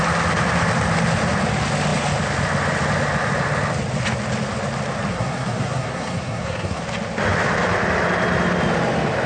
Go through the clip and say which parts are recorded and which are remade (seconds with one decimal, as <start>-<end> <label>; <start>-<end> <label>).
0.0-5.1 recorded; 5.1-6.8 remade; 6.8-9.3 recorded